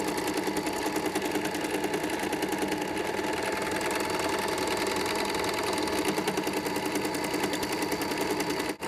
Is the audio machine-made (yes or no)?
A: no